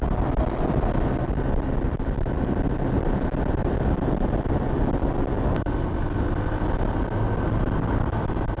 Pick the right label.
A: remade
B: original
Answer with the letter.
B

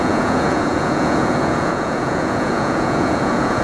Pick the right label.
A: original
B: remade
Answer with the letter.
B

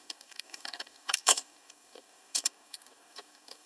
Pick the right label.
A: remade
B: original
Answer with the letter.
A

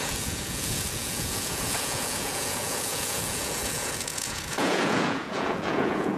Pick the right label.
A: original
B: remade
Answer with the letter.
B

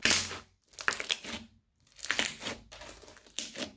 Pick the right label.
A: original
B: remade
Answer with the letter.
A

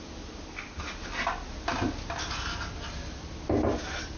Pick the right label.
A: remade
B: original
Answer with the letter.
B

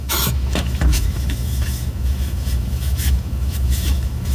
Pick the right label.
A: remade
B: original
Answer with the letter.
A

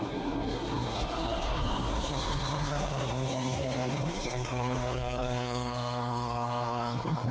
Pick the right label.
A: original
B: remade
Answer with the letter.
B